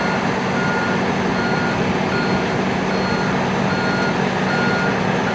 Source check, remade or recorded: recorded